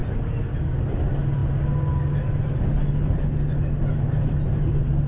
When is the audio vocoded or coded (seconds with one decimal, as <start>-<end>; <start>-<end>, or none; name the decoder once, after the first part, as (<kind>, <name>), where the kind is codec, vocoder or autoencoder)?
none